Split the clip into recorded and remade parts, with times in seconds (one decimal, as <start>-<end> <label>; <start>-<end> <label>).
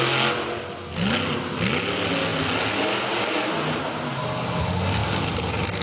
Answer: 0.0-5.8 recorded